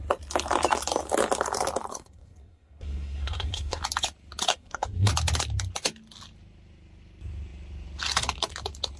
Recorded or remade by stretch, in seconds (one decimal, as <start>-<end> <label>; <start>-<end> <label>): 0.0-1.9 recorded; 1.9-3.8 remade; 3.8-4.5 recorded; 4.5-5.1 remade; 5.1-9.0 recorded